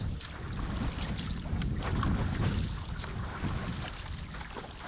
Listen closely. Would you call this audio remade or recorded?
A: recorded